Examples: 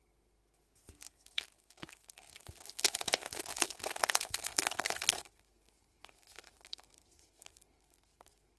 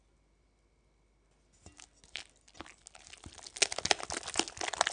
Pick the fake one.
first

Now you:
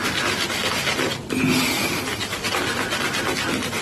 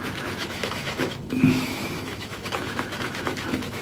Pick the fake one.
second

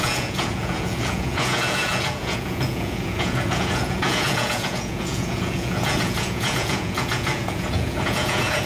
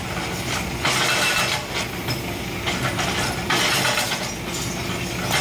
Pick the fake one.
first